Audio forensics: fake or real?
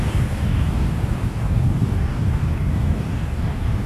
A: fake